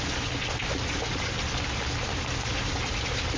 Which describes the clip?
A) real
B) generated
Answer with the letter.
A